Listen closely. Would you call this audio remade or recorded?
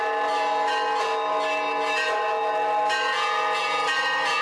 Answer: recorded